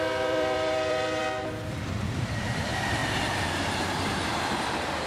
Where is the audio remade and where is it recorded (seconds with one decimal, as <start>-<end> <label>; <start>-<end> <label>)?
0.0-1.2 remade; 1.2-2.0 recorded; 2.0-3.0 remade; 3.0-3.8 recorded; 3.8-5.1 remade